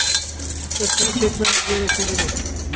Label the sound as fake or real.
real